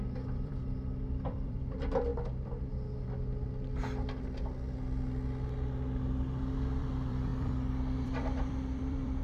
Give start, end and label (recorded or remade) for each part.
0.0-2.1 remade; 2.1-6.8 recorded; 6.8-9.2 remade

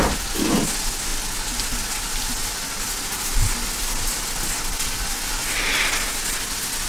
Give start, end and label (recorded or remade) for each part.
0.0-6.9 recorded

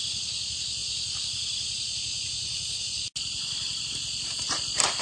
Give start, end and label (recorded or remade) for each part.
0.0-5.0 recorded

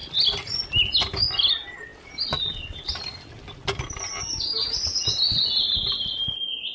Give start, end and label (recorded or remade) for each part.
0.0-6.7 recorded

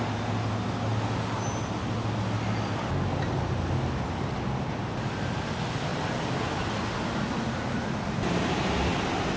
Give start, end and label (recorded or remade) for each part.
0.0-9.4 recorded

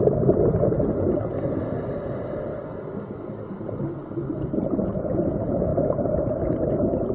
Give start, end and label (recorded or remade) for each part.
0.0-5.7 recorded; 5.7-7.1 remade

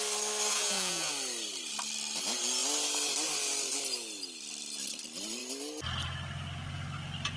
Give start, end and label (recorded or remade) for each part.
0.0-0.5 recorded; 0.5-1.1 remade; 1.1-7.4 recorded

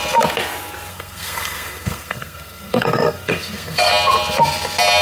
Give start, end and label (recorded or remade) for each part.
0.0-0.9 recorded; 0.9-3.9 remade; 3.9-5.0 recorded